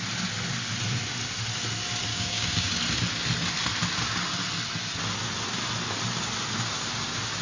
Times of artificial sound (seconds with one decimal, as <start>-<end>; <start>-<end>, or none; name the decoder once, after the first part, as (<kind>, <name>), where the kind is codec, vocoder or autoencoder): 2.1-2.7 (codec, DAC)